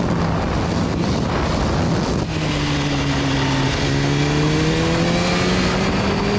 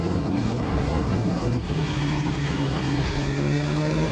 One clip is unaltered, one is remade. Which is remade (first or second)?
second